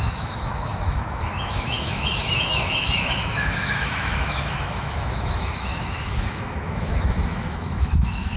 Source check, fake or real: fake